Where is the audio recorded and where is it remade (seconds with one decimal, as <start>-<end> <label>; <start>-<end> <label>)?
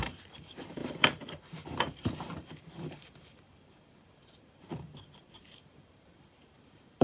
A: 0.0-7.0 remade